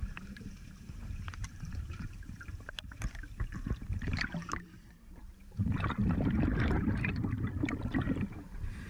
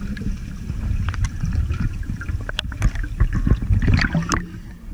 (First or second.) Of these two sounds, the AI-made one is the first